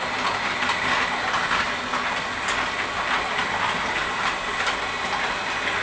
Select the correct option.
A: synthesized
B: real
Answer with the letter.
B